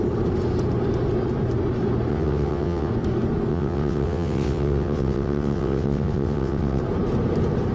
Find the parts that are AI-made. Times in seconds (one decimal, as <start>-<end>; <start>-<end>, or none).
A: 2.1-2.9; 3.5-6.8